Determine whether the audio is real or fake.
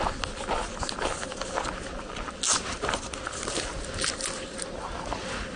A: real